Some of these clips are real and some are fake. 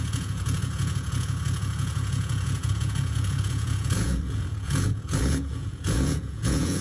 fake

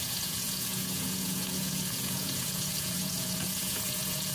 fake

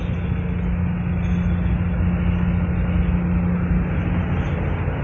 real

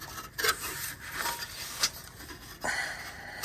real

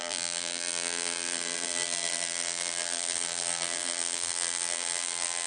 fake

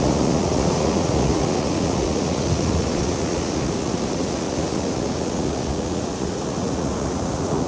fake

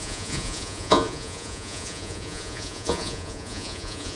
fake